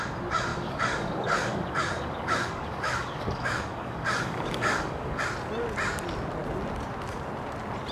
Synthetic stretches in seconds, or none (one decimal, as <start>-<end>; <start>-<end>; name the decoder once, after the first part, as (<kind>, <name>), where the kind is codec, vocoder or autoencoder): 0.5-5.2 (codec, DAC)